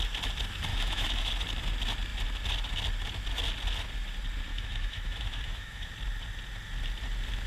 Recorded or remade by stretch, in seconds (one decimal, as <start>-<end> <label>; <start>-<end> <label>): 0.0-0.7 recorded; 0.7-1.3 remade; 1.3-4.5 recorded; 4.5-5.9 remade; 5.9-7.5 recorded